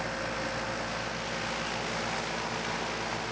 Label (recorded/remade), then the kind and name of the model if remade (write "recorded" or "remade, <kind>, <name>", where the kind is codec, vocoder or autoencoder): recorded